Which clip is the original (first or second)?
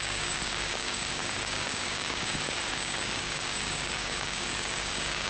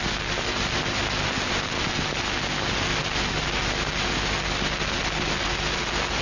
second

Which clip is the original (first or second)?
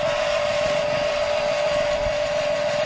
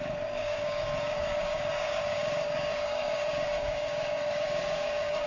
first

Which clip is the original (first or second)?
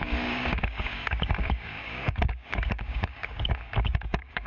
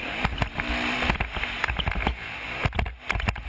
second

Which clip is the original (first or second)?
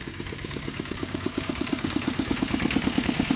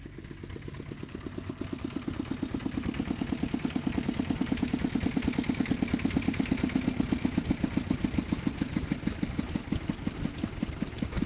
second